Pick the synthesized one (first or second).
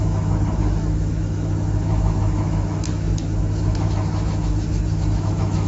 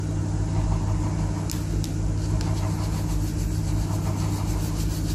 first